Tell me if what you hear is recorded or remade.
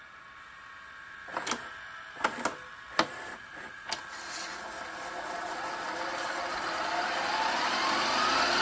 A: remade